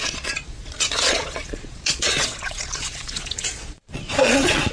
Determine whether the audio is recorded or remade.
remade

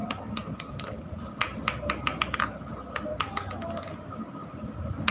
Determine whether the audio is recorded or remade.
recorded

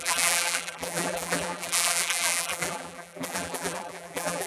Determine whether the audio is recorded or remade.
remade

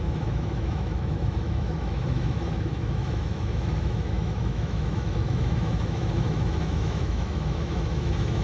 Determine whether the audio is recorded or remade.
remade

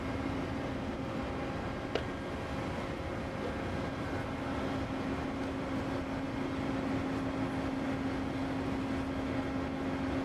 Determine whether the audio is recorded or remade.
recorded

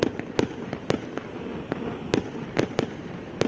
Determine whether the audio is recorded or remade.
recorded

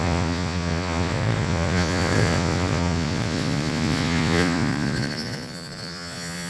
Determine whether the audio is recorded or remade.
remade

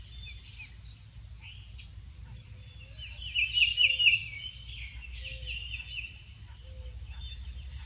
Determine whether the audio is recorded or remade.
recorded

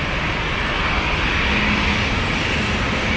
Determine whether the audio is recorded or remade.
recorded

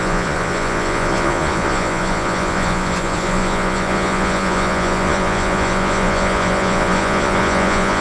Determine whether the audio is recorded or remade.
remade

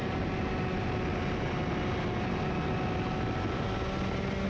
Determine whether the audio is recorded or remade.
recorded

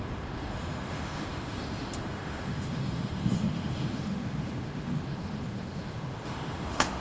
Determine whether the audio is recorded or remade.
remade